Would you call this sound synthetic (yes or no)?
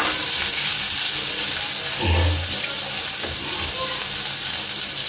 no